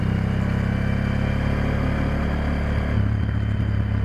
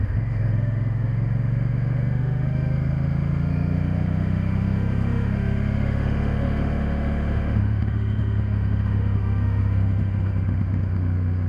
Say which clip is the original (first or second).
first